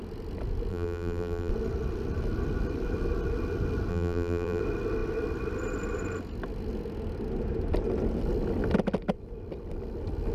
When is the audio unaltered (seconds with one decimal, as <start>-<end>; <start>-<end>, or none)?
0.0-0.7; 1.5-3.9; 4.6-10.3